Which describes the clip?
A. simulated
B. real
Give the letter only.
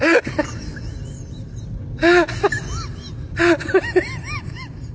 B